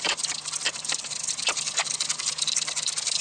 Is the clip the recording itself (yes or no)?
no